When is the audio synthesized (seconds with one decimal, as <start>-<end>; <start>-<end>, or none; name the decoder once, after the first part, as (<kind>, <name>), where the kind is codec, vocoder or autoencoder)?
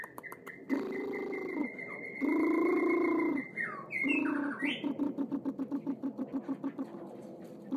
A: 0.0-7.8 (vocoder, BigVGAN v2)